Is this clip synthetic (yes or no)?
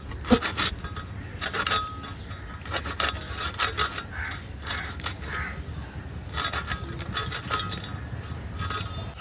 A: no